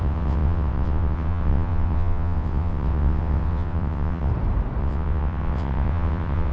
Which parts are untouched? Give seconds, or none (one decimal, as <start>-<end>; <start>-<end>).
4.3-4.8

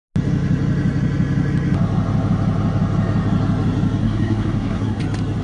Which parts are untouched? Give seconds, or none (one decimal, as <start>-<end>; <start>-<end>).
0.0-4.0; 5.0-5.4